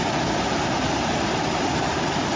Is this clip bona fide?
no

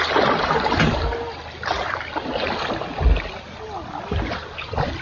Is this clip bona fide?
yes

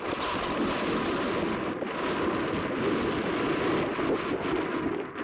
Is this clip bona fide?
no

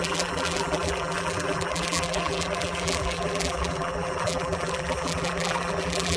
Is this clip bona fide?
no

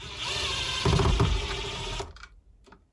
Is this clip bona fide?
no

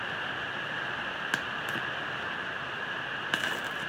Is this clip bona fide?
yes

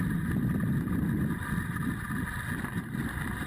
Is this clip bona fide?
yes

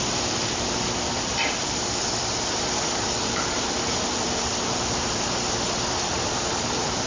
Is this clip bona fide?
no